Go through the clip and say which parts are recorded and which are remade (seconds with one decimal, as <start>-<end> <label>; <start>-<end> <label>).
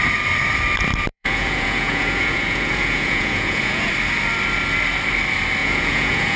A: 0.0-1.1 recorded; 1.1-3.9 remade; 3.9-5.6 recorded; 5.6-6.4 remade